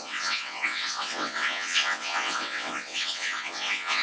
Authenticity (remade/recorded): remade